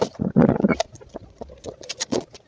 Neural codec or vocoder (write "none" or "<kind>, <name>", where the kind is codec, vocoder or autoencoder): vocoder, Vocos